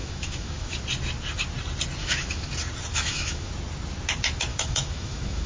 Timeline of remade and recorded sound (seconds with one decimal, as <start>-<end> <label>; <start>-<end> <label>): 0.0-0.8 remade; 0.8-2.0 recorded; 2.0-2.5 remade; 2.5-2.9 recorded; 2.9-3.5 remade; 3.5-4.5 recorded; 4.5-5.5 remade